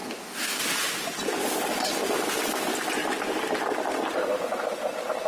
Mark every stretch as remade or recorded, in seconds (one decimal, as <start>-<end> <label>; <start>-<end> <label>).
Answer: 0.0-0.6 remade; 0.6-5.3 recorded